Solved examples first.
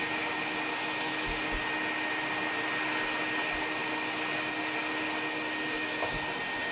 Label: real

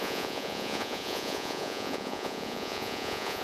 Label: fake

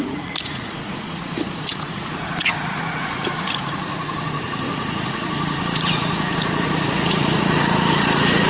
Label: fake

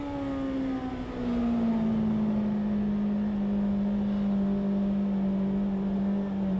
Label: real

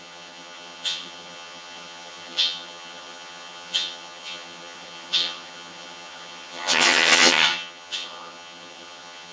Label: fake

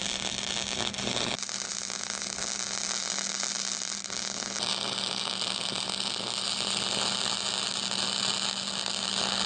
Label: real